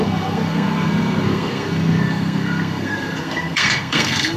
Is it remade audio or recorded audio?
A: remade